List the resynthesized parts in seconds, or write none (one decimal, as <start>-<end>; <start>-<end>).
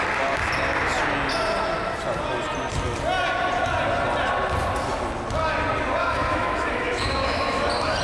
6.0-7.6